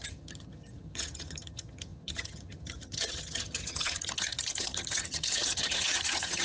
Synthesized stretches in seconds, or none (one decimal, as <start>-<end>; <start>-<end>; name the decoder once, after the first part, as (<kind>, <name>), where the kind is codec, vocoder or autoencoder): 0.0-6.4 (vocoder, HiFi-GAN)